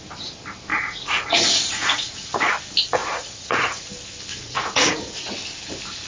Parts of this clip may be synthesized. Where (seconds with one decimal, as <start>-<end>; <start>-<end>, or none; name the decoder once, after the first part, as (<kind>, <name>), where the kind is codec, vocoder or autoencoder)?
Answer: 0.7-2.5 (vocoder, Vocos); 3.0-3.9; 4.3-5.3

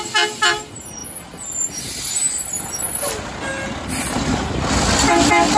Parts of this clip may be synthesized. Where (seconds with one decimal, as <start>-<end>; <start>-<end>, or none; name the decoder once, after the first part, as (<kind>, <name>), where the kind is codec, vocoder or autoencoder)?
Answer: none